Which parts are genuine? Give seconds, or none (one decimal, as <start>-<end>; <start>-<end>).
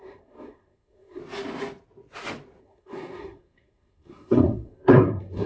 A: 1.2-2.6